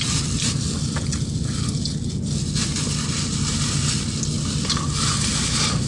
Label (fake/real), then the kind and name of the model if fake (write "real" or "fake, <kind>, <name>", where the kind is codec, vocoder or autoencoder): real